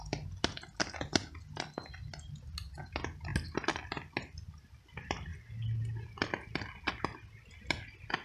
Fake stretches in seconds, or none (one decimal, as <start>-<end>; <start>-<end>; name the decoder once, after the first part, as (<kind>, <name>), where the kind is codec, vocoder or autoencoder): none